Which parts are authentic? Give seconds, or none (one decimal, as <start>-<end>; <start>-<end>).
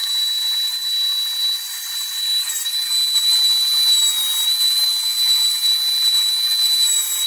0.0-7.3